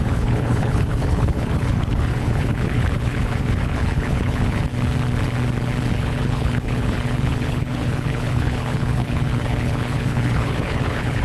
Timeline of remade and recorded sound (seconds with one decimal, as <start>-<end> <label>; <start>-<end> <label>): 0.0-4.7 remade; 4.7-5.9 recorded; 5.9-11.2 remade

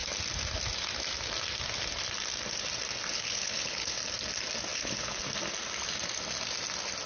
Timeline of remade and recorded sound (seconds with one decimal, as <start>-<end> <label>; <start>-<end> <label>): 0.0-3.1 recorded; 3.1-4.0 remade; 4.0-4.7 recorded; 4.7-5.2 remade; 5.2-7.1 recorded

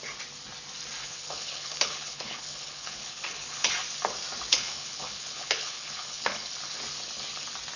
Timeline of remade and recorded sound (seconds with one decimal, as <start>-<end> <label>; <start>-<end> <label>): 0.0-1.0 recorded; 1.0-3.7 remade; 3.7-4.5 recorded; 4.5-6.5 remade; 6.5-7.8 recorded

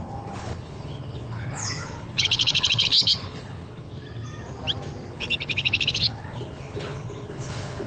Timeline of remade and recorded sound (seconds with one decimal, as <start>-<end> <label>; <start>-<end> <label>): 0.0-3.9 remade; 3.9-5.1 recorded; 5.1-7.9 remade